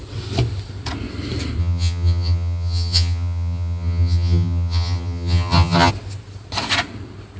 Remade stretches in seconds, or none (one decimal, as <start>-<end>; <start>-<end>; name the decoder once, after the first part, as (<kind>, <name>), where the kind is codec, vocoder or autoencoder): 1.6-5.9 (vocoder, HiFi-GAN)